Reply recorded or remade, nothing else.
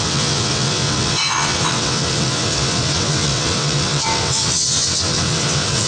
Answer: remade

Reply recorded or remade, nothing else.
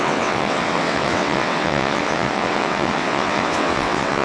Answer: remade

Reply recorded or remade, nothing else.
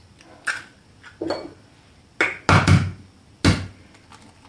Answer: recorded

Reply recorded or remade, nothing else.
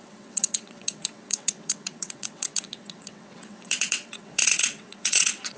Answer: remade